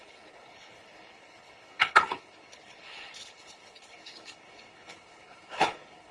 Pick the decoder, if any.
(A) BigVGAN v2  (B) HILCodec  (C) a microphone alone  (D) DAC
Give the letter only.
B